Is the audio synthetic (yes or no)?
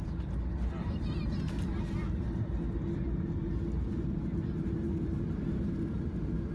no